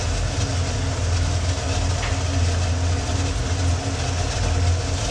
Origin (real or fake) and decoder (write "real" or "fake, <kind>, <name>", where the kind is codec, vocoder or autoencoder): real